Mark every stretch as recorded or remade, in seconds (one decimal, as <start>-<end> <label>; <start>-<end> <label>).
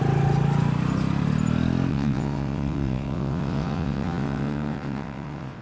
0.0-1.9 recorded; 1.9-5.6 remade